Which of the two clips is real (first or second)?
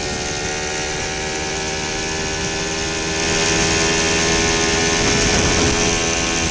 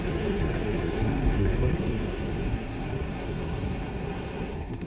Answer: first